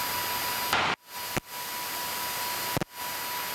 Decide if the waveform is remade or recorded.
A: recorded